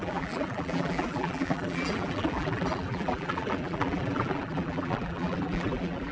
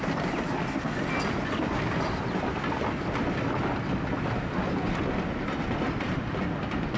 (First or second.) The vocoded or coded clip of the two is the first